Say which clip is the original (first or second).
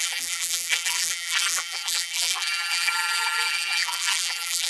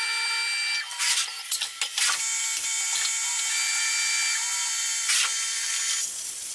second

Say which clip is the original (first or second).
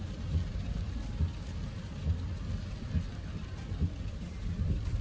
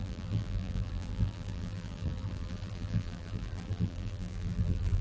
first